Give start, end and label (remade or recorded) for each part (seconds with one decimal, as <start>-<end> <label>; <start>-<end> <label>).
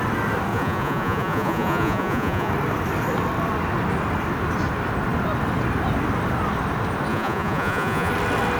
0.0-0.5 recorded; 0.5-2.5 remade; 2.5-7.1 recorded; 7.1-8.1 remade; 8.1-8.6 recorded